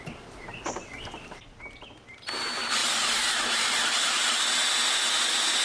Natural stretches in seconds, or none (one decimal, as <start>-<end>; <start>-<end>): 0.0-2.8; 4.2-5.6